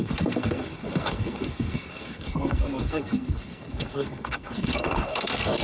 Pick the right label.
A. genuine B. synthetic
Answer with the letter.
B